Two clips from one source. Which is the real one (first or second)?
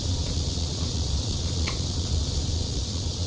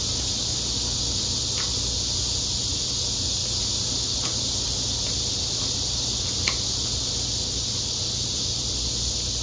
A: second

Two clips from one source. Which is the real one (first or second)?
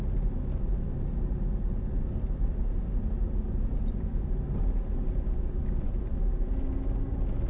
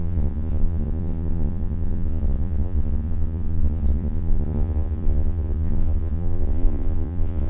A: first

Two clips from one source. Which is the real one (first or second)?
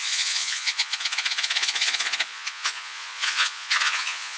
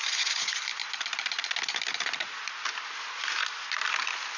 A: second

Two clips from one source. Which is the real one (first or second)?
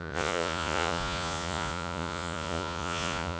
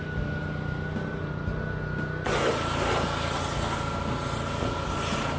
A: second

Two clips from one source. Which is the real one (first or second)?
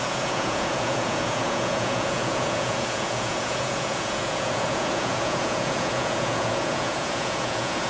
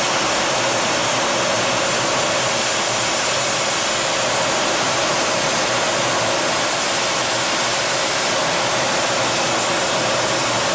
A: second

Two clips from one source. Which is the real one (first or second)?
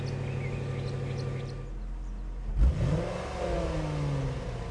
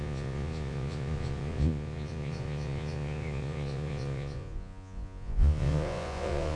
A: first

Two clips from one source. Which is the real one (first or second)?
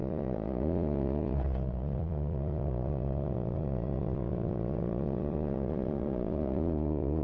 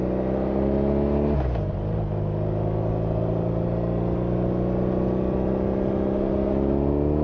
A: second